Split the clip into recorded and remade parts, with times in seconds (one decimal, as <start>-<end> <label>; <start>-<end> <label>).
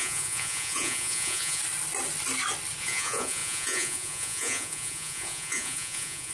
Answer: 0.0-1.6 remade; 1.6-2.8 recorded; 2.8-6.3 remade